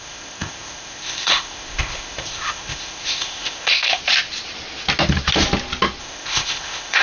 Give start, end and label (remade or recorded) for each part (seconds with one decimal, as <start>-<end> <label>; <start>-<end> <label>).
0.0-4.0 remade; 4.0-6.0 recorded; 6.0-7.0 remade